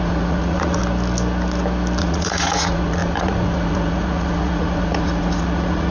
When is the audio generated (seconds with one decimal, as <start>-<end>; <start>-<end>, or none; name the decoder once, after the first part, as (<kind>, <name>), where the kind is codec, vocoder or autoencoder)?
0.0-0.8 (vocoder, Vocos); 2.0-5.9